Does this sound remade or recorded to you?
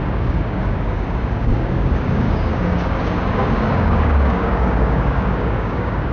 remade